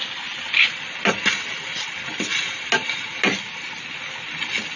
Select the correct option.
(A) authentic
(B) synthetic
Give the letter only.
A